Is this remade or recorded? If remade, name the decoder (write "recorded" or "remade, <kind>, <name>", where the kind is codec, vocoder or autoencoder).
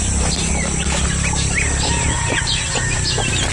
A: recorded